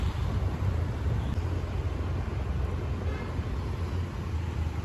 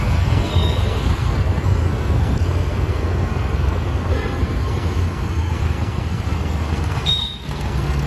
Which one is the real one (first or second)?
first